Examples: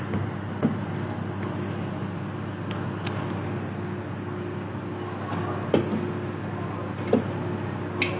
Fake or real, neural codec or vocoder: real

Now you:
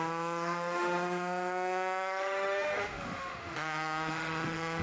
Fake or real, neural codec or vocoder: fake, autoencoder, DAC-VAE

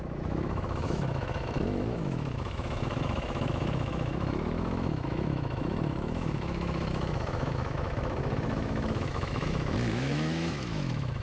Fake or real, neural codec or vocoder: fake, autoencoder, DAC-VAE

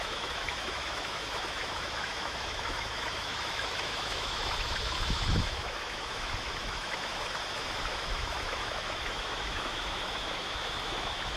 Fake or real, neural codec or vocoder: fake, autoencoder, DAC-VAE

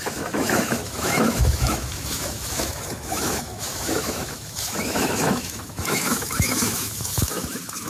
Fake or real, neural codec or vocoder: fake, autoencoder, DAC-VAE